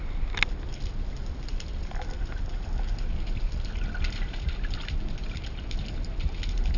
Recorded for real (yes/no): yes